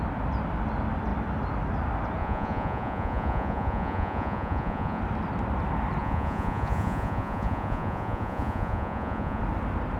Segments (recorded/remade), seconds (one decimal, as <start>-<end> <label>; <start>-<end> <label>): 0.0-2.2 recorded; 2.2-5.0 remade; 5.0-6.0 recorded; 6.0-9.4 remade; 9.4-10.0 recorded